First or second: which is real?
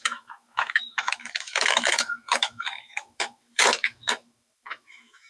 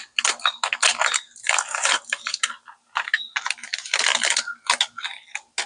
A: second